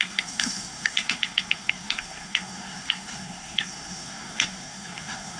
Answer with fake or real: fake